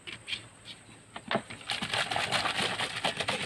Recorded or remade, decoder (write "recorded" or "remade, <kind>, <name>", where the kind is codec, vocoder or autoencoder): recorded